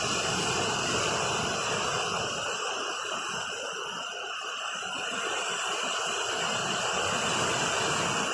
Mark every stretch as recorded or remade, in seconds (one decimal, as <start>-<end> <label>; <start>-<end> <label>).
0.0-8.3 recorded